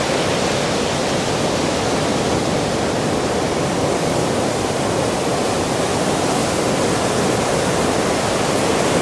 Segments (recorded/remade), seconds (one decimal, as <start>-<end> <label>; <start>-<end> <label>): 0.0-9.0 recorded